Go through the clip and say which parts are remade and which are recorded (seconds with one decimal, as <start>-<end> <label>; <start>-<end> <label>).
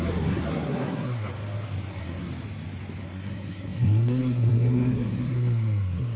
0.0-1.3 remade; 1.3-1.9 recorded; 1.9-2.3 remade; 2.3-3.0 recorded; 3.0-6.2 remade